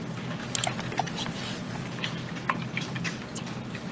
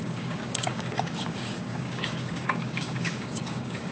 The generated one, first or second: second